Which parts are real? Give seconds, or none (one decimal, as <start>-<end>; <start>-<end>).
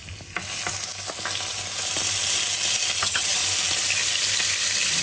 0.0-3.0; 3.4-5.0